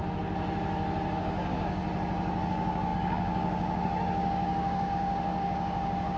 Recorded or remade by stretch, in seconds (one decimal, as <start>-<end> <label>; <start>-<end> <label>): 0.0-1.2 recorded; 1.2-1.8 remade; 1.8-2.5 recorded; 2.5-6.2 remade